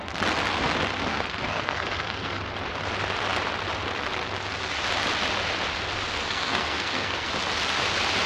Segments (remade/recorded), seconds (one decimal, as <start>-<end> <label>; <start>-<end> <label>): 0.0-1.1 recorded; 1.1-2.4 remade; 2.4-6.1 recorded; 6.1-7.3 remade; 7.3-8.3 recorded